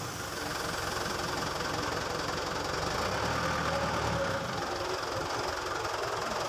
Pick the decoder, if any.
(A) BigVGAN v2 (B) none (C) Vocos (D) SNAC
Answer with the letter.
B